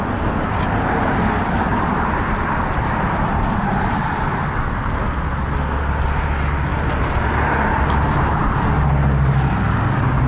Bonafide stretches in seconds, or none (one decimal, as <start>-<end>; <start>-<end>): 0.0-1.7; 4.4-10.3